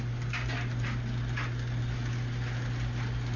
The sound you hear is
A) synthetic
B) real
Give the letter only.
B